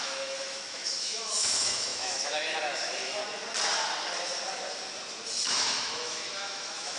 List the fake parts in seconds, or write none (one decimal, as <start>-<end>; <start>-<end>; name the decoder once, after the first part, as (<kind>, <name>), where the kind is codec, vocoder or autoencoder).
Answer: 0.0-3.2 (autoencoder, DAC-VAE); 5.5-7.0